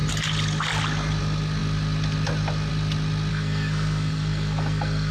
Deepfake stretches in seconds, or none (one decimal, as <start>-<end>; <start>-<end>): 3.3-5.1